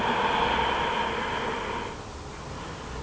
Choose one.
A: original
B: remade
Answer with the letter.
A